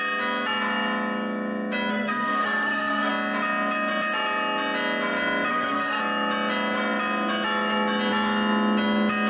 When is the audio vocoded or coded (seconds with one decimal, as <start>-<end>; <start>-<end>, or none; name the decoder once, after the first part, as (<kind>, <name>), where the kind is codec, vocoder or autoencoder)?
1.9-3.1 (codec, SNAC); 5.5-6.0